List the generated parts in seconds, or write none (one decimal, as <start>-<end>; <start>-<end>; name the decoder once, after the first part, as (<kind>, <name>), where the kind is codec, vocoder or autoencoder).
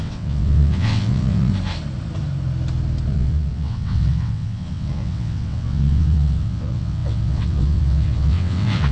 0.0-1.5 (vocoder, WaveNeXt); 3.1-8.9